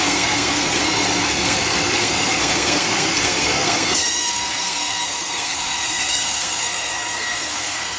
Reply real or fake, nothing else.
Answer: fake